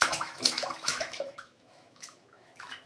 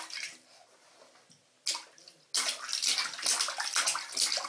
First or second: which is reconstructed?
first